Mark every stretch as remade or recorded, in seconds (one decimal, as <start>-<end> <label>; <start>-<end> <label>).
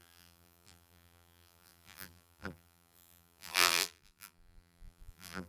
0.0-5.5 remade